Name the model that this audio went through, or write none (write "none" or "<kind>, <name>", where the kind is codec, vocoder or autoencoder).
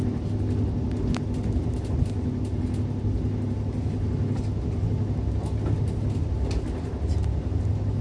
none